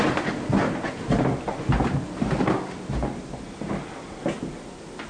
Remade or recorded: recorded